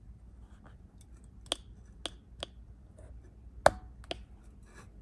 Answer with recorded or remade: recorded